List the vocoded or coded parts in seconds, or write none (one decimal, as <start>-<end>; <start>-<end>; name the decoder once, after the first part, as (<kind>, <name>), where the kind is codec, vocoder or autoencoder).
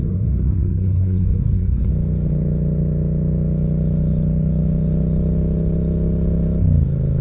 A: 0.0-1.9 (codec, SNAC)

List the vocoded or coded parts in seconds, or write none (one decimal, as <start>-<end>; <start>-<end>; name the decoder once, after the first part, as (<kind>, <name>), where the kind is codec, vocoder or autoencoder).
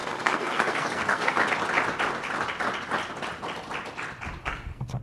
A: 0.0-1.5 (codec, SNAC); 4.4-5.0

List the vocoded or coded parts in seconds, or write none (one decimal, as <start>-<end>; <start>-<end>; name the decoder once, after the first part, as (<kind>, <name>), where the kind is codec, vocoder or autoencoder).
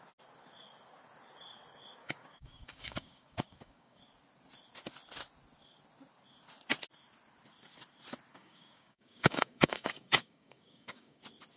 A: 2.0-4.0 (codec, DAC); 8.3-11.2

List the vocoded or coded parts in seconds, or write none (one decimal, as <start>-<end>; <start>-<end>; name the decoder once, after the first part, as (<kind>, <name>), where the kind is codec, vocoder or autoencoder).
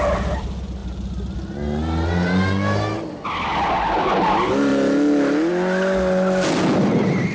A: none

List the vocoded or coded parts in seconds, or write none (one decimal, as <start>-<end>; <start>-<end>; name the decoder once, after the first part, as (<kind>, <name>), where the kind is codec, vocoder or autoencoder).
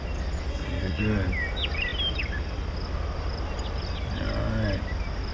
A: 0.5-1.0 (codec, SNAC)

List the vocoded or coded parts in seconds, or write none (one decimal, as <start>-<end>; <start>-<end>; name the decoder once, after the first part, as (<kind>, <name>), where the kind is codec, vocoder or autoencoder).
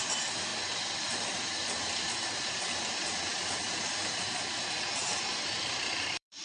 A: 0.0-0.5 (vocoder, BigVGAN v2); 4.2-6.4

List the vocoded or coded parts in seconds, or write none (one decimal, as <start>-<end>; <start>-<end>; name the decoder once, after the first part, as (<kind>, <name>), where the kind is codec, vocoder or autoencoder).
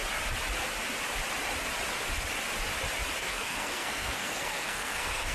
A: 3.2-5.3 (codec, SNAC)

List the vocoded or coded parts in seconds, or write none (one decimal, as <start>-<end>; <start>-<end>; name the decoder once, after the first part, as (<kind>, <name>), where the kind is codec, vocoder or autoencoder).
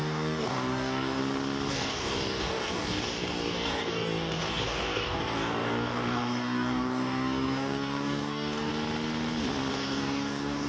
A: 0.0-1.2 (codec, DAC); 1.7-8.7; 9.7-10.7